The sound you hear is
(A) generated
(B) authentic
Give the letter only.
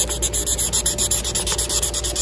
B